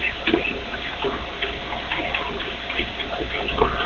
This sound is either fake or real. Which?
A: real